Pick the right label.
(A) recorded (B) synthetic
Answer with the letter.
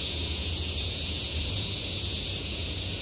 B